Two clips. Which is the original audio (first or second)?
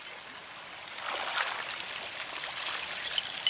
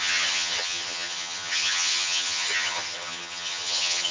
first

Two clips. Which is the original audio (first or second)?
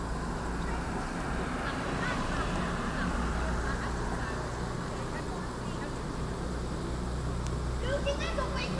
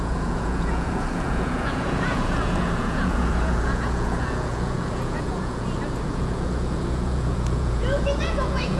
first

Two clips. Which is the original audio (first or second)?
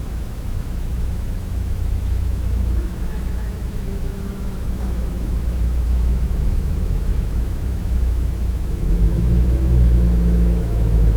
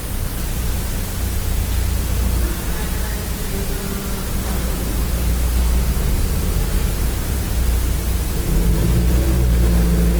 second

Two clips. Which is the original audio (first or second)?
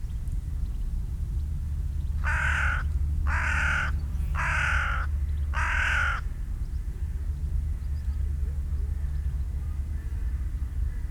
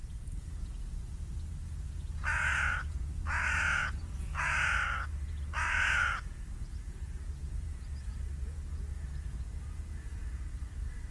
first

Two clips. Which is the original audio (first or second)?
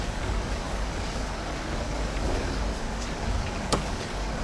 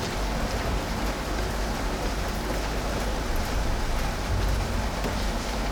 second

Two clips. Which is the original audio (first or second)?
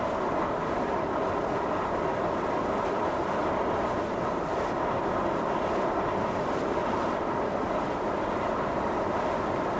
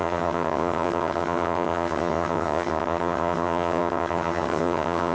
first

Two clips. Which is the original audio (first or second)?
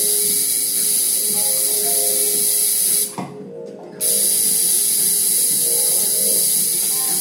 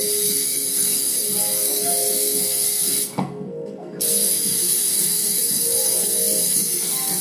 first